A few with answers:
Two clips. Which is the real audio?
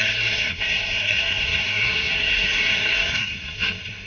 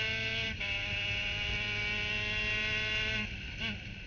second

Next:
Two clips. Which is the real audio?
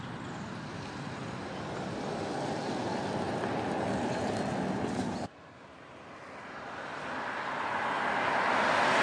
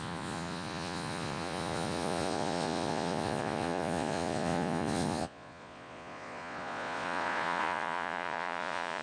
first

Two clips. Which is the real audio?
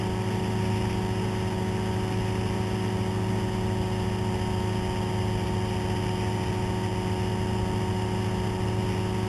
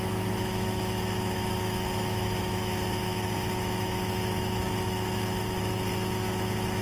first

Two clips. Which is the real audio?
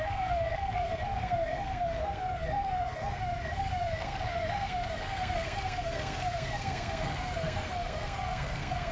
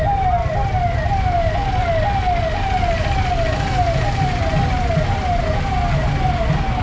second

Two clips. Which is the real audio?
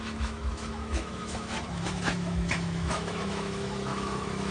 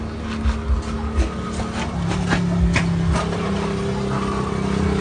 second